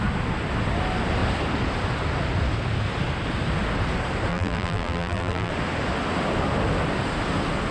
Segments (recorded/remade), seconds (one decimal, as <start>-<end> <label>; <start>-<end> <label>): 0.0-4.3 recorded; 4.3-5.5 remade; 5.5-7.7 recorded